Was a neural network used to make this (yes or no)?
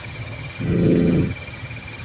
yes